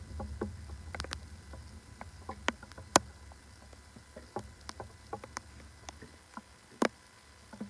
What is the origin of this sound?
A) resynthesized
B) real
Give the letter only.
B